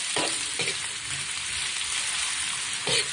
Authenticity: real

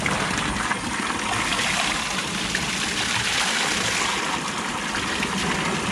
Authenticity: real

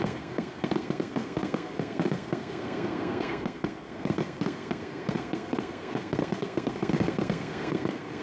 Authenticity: fake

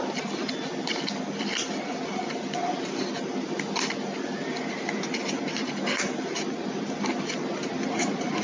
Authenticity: real